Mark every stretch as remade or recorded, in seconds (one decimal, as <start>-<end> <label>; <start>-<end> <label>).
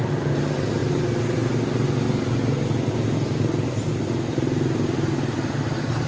0.0-6.1 recorded